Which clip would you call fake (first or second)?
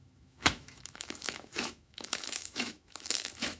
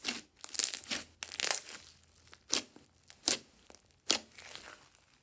first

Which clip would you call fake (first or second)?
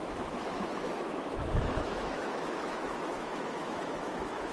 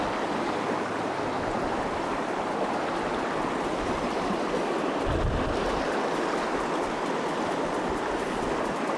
first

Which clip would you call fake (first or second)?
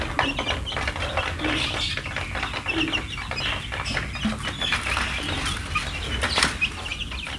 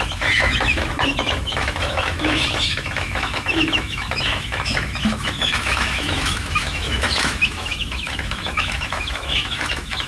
second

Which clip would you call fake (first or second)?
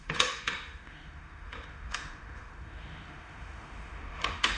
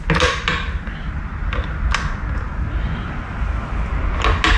first